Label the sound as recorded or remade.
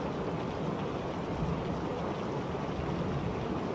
recorded